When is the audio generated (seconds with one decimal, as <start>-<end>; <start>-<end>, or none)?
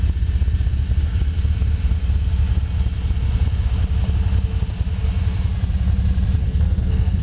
6.4-7.2